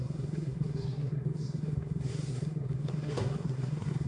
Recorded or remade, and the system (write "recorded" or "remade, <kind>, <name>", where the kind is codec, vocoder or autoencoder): remade, codec, SNAC